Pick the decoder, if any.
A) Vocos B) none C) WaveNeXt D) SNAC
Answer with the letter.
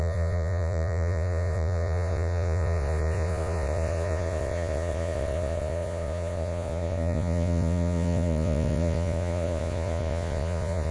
A